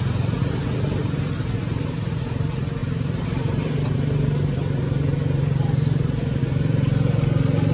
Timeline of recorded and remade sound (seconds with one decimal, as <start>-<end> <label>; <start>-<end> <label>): 0.0-1.0 recorded; 1.0-2.4 remade; 2.4-2.8 recorded; 2.8-6.4 remade; 6.4-7.7 recorded